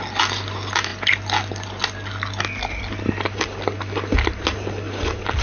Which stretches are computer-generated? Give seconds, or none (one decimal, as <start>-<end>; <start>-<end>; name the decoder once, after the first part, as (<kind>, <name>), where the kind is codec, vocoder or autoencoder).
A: none